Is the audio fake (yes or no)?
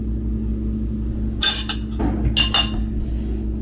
no